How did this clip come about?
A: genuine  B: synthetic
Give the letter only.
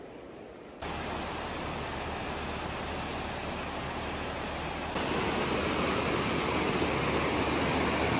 A